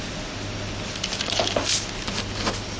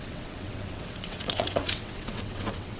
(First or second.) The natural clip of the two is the first